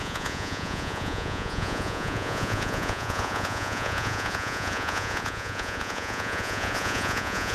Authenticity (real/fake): fake